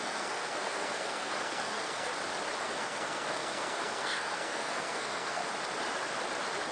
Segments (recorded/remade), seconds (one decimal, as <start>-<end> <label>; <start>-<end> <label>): 0.0-2.1 remade; 2.1-2.6 recorded; 2.6-5.4 remade; 5.4-6.7 recorded